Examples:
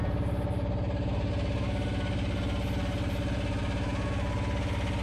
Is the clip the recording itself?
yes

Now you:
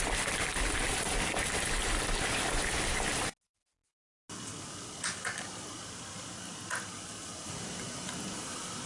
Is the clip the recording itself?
yes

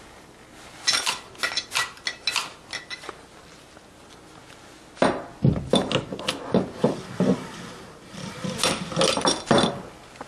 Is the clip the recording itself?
yes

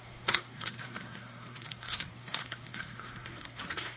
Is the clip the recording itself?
no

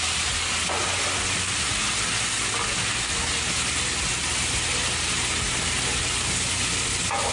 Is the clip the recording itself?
yes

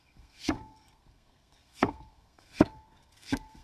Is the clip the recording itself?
no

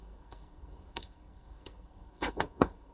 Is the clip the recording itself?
no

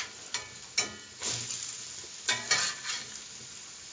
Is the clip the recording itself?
yes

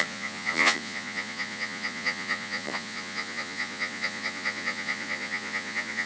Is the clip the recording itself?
no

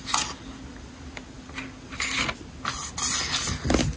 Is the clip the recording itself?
yes